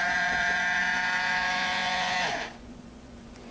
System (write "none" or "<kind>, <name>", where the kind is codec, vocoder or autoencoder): vocoder, Vocos